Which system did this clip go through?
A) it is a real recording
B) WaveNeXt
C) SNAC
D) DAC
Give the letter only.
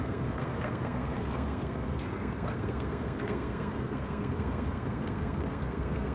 C